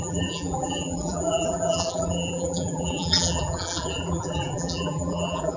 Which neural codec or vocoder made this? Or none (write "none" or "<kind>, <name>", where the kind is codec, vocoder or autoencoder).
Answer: vocoder, BigVGAN v2